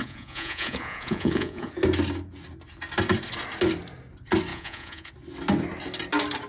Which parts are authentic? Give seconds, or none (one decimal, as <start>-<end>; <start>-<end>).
1.7-4.5; 5.1-6.5